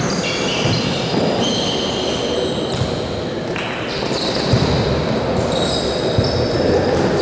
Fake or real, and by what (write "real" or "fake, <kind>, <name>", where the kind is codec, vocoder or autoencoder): real